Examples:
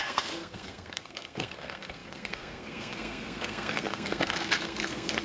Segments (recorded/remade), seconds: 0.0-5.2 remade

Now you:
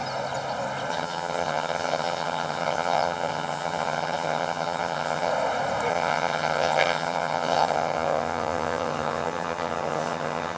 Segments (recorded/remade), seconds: 0.0-0.9 recorded; 0.9-5.3 remade; 5.3-5.9 recorded; 5.9-10.6 remade

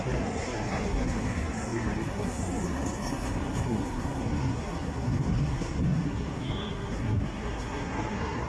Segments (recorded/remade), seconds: 0.0-8.5 remade

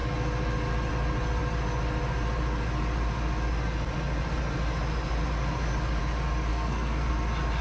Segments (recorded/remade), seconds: 0.0-6.5 recorded; 6.5-7.1 remade; 7.1-7.6 recorded

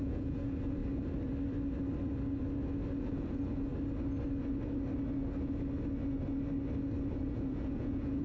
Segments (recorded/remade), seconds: 0.0-0.8 remade; 0.8-3.0 recorded; 3.0-3.7 remade; 3.7-7.1 recorded; 7.1-8.2 remade

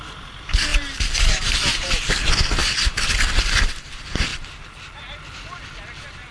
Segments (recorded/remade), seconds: 0.0-0.7 recorded; 0.7-2.1 remade; 2.1-4.3 recorded; 4.3-5.0 remade; 5.0-6.3 recorded

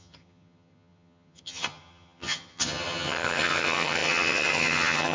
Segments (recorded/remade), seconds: 0.0-5.1 remade